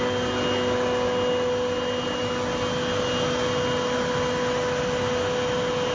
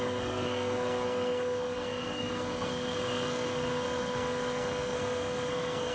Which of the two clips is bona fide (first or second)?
first